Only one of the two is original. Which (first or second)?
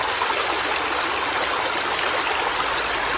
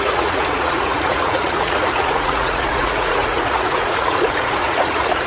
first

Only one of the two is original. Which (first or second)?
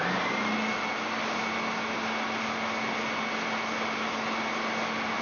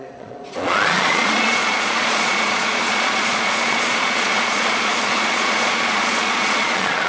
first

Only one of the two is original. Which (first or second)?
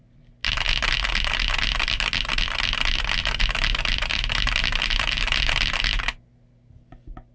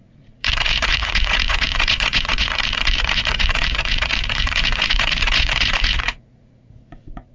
first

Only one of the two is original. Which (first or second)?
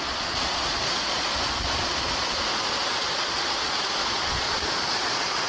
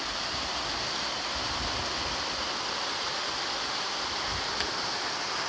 second